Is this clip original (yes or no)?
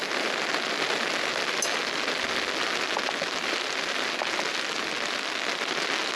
yes